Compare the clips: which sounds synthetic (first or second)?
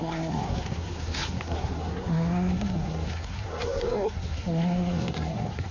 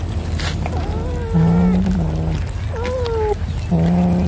first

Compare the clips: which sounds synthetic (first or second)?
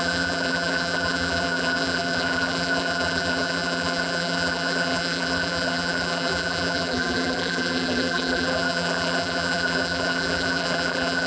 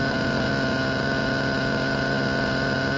first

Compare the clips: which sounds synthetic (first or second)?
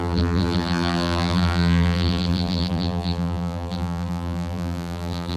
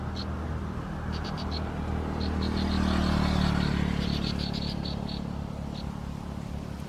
first